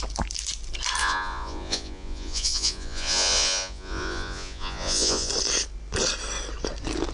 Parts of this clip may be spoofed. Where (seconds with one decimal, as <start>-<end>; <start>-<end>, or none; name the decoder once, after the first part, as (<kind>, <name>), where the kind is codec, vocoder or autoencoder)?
1.0-5.3 (vocoder, Vocos)